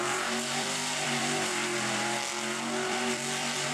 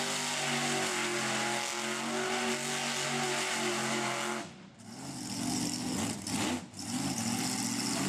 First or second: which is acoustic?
second